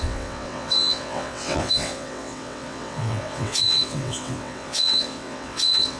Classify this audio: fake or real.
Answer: fake